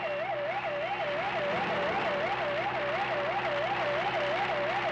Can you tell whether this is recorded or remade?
recorded